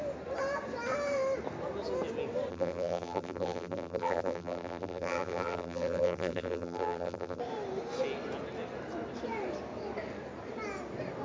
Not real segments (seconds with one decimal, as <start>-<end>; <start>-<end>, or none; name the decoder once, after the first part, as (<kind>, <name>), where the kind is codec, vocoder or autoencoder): 2.5-7.4 (vocoder, BigVGAN v2)